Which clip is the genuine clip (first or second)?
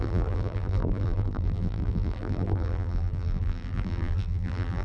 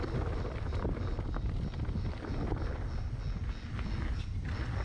second